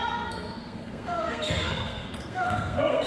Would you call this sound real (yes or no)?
no